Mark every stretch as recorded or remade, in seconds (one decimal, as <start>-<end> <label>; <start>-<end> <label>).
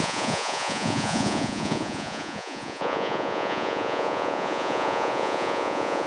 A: 0.0-6.1 remade